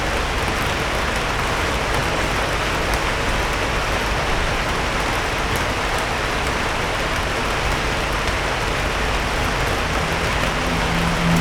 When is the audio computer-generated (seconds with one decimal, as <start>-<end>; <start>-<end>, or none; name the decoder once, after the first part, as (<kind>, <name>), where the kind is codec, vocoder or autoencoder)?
none